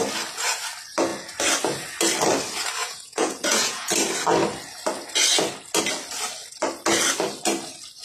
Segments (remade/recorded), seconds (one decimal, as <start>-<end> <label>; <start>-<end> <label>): 0.0-2.8 recorded; 2.8-3.9 remade; 3.9-8.0 recorded